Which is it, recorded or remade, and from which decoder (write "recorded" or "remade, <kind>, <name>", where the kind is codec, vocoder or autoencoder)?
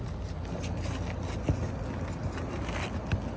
recorded